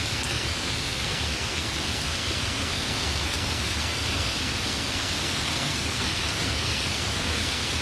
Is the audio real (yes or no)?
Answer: no